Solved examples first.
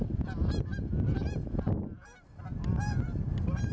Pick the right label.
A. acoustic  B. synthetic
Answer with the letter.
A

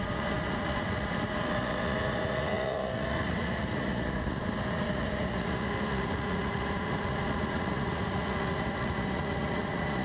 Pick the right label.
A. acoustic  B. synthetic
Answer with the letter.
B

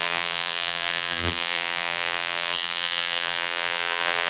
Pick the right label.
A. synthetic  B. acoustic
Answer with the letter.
A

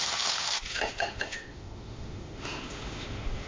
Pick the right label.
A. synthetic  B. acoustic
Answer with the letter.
A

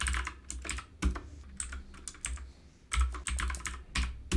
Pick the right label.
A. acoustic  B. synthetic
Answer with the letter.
A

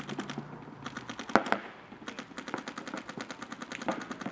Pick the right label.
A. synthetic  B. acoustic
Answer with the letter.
B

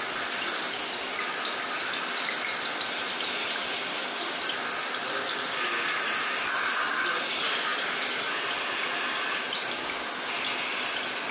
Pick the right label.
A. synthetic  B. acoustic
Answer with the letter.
B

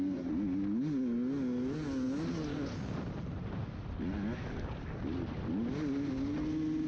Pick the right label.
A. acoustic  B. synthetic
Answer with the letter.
A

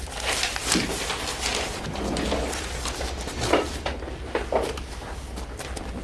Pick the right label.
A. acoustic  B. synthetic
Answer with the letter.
A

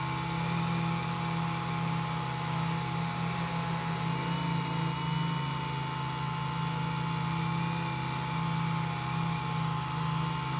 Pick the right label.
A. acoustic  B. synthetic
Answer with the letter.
A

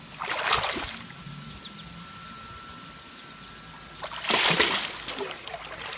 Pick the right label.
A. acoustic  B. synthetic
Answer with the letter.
A